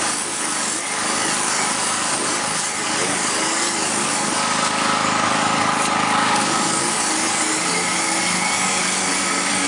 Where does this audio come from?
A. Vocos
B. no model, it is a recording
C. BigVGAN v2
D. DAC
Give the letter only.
D